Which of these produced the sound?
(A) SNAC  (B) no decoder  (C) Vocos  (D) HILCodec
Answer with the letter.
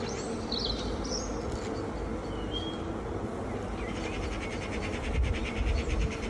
B